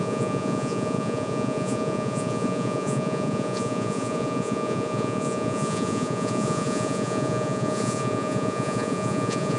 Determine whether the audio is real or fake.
fake